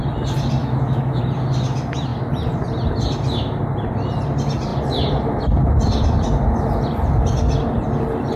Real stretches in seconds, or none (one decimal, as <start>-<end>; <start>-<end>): 0.0-0.6; 1.2-8.4